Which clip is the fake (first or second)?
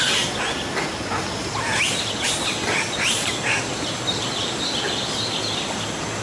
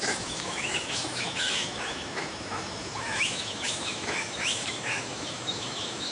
second